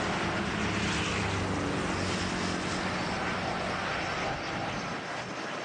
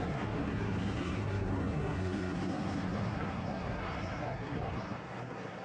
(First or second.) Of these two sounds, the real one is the first